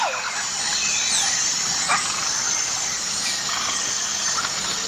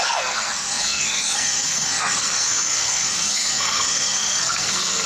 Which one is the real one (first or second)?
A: first